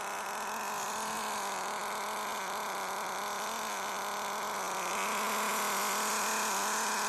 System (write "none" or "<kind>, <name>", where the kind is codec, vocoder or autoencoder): none